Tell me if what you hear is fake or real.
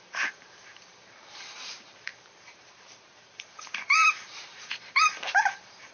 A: fake